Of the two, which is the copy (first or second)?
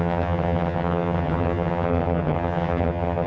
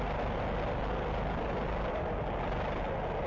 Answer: first